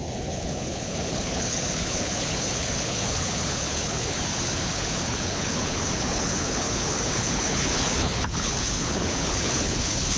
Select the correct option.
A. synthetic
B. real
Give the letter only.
A